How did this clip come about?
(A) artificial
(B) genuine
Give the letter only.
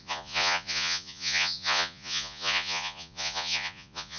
A